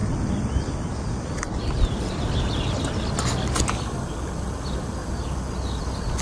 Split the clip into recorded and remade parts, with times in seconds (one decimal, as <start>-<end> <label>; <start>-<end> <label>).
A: 0.0-6.2 recorded

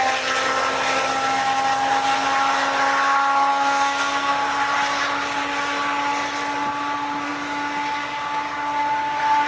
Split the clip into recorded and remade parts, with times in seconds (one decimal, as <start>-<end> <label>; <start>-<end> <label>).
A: 0.0-3.5 recorded; 3.5-4.3 remade; 4.3-9.5 recorded